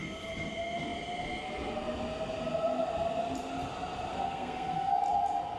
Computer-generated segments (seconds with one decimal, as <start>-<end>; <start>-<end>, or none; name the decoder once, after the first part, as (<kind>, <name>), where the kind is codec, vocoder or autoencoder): 4.1-4.9 (codec, SNAC)